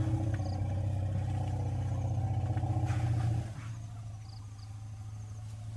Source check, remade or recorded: recorded